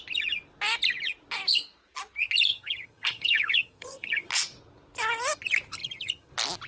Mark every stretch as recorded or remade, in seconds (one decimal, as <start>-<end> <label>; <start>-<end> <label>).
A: 0.0-2.5 recorded; 2.5-4.3 remade; 4.3-5.8 recorded; 5.8-6.3 remade; 6.3-6.7 recorded

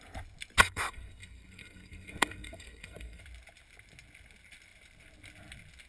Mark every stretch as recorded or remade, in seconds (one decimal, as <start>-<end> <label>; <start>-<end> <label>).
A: 0.0-0.6 recorded; 0.6-3.2 remade; 3.2-5.9 recorded